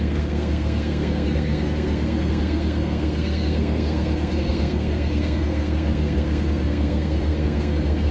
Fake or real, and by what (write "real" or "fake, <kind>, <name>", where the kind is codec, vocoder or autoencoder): fake, codec, SNAC